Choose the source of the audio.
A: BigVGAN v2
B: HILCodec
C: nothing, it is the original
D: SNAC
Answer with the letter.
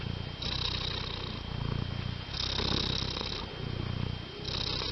C